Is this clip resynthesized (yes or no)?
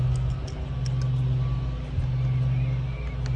no